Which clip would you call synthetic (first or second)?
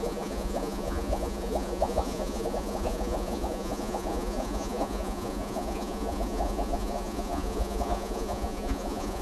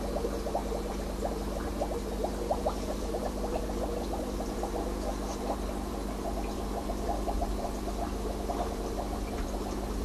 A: first